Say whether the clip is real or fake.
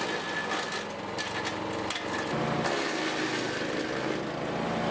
real